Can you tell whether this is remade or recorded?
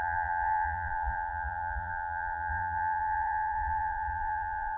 remade